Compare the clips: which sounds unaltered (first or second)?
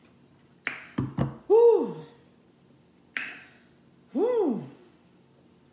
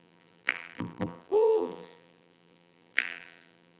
first